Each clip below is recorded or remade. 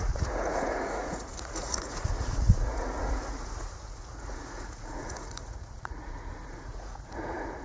remade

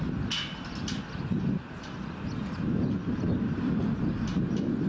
recorded